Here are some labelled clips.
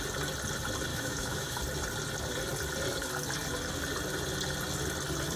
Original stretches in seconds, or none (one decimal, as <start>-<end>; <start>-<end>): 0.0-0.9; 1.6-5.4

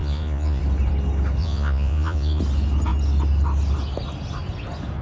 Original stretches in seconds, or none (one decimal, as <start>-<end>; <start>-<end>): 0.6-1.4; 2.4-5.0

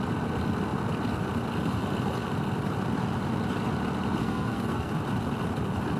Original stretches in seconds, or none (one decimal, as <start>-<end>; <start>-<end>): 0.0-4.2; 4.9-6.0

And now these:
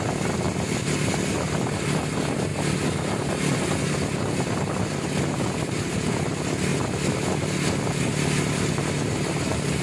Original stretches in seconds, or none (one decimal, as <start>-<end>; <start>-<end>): 0.0-9.8

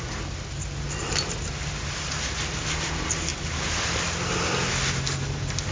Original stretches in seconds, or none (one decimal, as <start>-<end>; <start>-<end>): 0.0-5.7

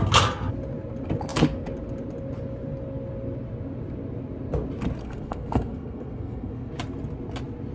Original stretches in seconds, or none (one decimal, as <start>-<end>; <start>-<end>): 0.0-5.0; 6.7-7.7